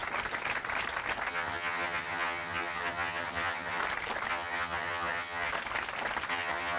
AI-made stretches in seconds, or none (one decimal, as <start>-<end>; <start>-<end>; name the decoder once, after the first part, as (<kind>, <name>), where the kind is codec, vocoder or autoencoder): 1.3-3.8 (vocoder, HiFi-GAN); 4.3-5.5; 6.3-6.8